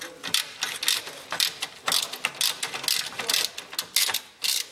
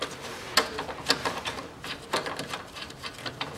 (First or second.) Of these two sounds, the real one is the first